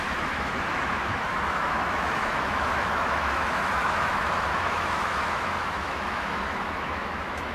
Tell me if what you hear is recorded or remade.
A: remade